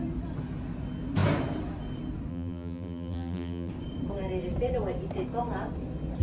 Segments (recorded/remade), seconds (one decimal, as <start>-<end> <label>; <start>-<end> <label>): 0.0-2.3 recorded; 2.3-3.7 remade; 3.7-6.2 recorded